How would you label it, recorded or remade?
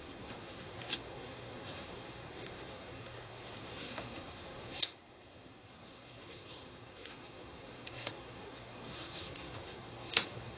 remade